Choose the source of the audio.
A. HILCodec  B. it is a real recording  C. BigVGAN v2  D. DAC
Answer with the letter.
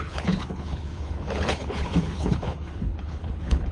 A